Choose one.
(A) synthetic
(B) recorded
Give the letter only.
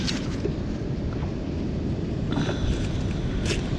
B